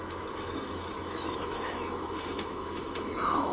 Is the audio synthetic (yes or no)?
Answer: yes